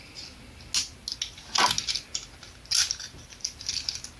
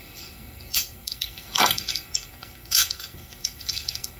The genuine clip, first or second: first